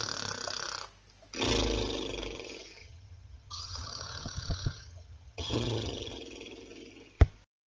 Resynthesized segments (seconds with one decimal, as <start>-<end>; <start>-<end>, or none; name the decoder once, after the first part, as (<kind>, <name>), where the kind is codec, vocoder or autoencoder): 2.8-6.1 (vocoder, HiFi-GAN)